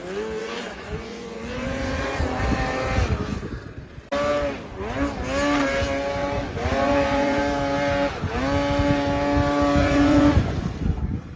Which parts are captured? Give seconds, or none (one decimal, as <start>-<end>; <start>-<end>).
0.0-0.4; 2.4-6.2; 7.4-9.8; 10.6-11.4